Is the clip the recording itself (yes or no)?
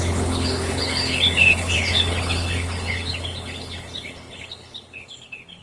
no